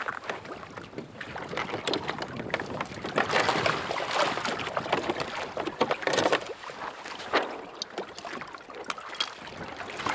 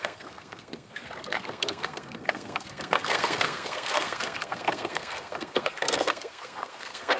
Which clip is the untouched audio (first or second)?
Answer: first